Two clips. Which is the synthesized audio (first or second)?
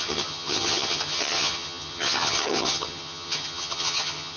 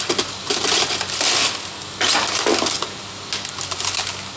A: first